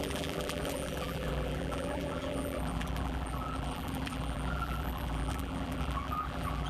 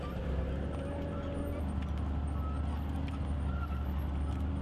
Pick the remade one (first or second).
first